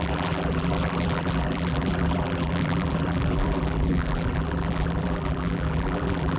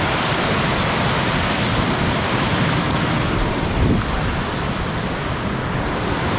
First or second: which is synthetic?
first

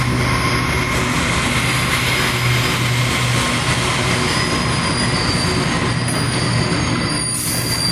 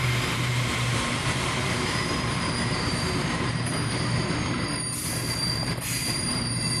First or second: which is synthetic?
second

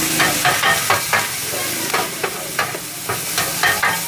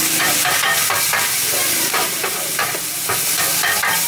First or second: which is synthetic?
second